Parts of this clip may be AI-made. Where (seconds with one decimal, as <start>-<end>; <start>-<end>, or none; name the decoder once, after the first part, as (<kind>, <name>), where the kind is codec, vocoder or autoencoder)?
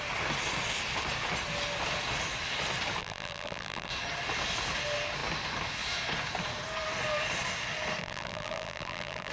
3.0-3.9 (vocoder, BigVGAN v2); 8.0-9.3